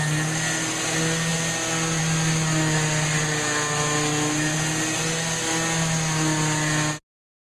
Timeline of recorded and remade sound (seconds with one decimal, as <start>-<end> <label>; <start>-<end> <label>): 0.0-7.4 recorded